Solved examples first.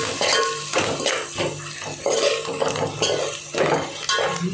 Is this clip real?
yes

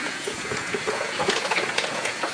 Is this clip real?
no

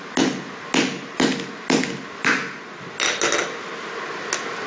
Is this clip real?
yes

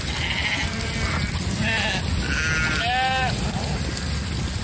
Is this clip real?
yes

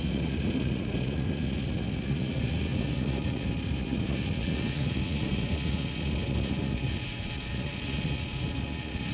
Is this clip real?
no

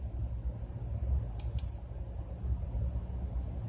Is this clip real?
yes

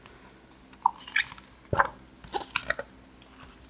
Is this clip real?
yes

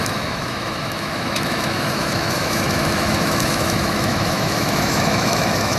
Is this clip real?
no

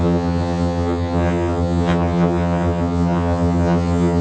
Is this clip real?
no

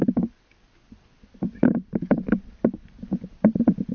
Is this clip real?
no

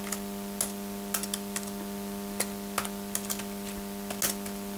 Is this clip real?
yes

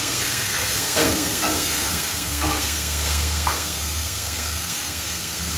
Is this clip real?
no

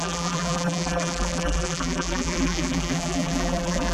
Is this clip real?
no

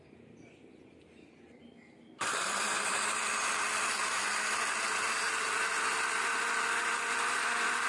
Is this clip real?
no